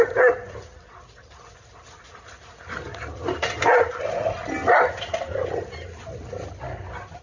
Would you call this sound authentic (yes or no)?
yes